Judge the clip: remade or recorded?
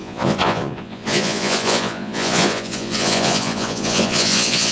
remade